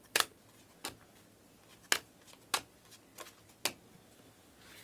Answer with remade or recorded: recorded